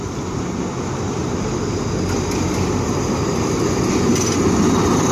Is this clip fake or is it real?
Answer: real